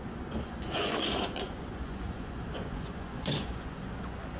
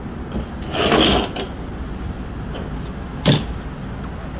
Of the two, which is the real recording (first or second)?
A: second